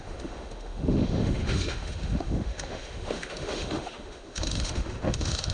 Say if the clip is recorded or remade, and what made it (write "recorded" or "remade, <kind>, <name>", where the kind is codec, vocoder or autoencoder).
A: remade, autoencoder, DAC-VAE